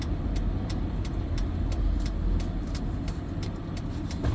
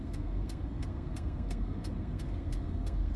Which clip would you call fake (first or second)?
second